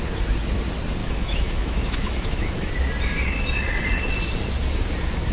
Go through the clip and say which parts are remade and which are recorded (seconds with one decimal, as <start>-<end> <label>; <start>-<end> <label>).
0.0-1.0 recorded; 1.0-2.7 remade; 2.7-5.3 recorded